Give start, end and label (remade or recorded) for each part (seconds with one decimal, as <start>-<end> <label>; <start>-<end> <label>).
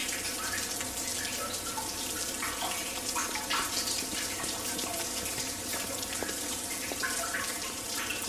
0.0-8.3 recorded